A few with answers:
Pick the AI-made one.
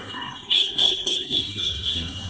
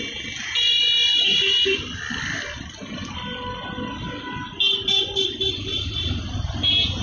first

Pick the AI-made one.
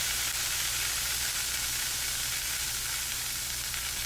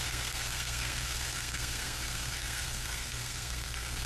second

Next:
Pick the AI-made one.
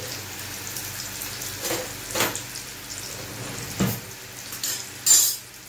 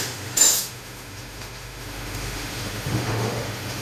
second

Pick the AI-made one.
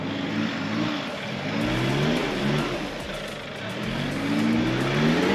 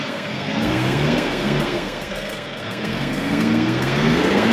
second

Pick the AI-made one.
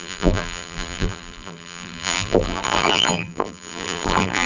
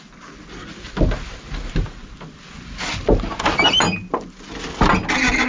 first